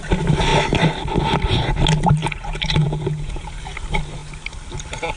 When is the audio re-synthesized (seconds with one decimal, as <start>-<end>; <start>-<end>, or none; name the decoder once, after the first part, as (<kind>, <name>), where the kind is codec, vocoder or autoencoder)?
2.2-3.5 (vocoder, Vocos)